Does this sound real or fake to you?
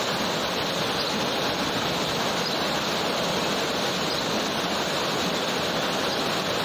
real